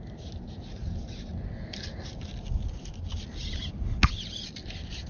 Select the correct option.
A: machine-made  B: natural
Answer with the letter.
B